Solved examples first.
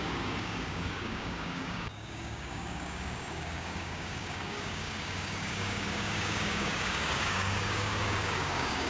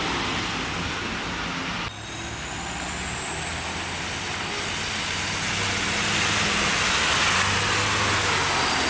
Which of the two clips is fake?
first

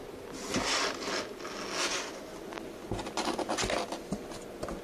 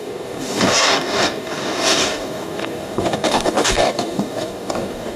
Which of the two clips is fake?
second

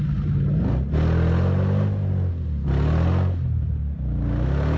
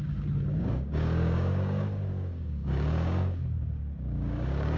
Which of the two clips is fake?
second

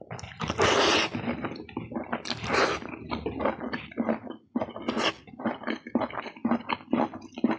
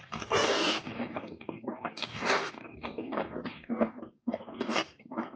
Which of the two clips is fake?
second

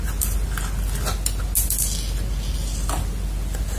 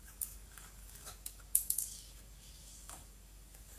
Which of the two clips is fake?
second